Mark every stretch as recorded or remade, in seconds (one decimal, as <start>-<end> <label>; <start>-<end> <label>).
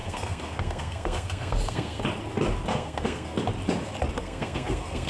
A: 0.0-2.0 remade; 2.0-2.7 recorded; 2.7-3.4 remade; 3.4-4.2 recorded; 4.2-5.1 remade